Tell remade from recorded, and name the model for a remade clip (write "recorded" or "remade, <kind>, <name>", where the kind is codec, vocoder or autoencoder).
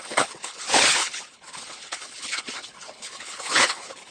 remade, codec, HILCodec